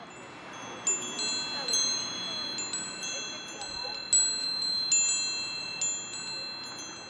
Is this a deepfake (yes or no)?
no